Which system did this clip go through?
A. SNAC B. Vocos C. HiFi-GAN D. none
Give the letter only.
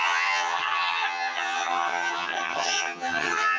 C